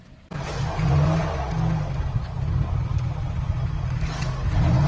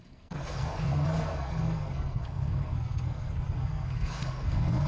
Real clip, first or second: first